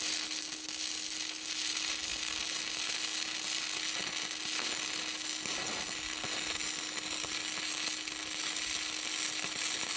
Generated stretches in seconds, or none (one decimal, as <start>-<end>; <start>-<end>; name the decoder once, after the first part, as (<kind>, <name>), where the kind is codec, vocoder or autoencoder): none